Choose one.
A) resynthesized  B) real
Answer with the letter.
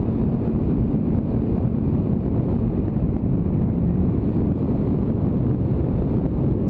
B